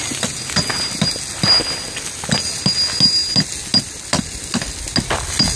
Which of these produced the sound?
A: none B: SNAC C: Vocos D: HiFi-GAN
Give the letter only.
A